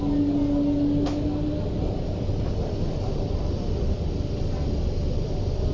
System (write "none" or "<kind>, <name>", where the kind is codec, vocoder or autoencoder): none